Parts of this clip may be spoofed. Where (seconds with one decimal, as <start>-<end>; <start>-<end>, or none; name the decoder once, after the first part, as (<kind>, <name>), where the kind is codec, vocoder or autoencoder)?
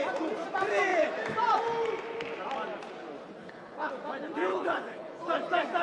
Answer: 3.4-3.9 (codec, HILCodec); 4.5-5.2